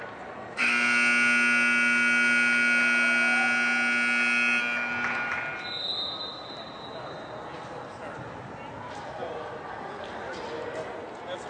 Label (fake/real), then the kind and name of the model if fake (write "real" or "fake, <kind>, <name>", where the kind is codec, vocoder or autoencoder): real